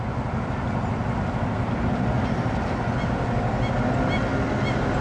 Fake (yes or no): no